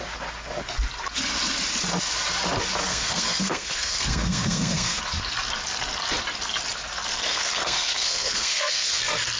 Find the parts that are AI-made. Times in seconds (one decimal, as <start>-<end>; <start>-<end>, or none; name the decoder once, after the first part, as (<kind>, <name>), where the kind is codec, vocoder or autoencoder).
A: 2.9-5.0 (codec, SNAC); 7.1-9.0